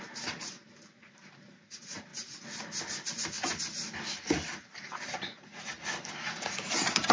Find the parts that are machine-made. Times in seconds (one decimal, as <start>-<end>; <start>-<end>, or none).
0.0-2.1; 4.3-5.5; 6.1-7.1